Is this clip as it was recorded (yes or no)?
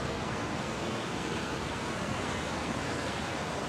no